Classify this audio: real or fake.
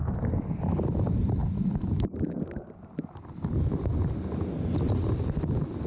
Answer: real